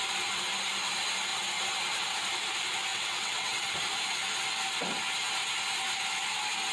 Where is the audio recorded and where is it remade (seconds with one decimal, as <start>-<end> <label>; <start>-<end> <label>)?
0.0-2.9 recorded; 2.9-3.7 remade; 3.7-6.7 recorded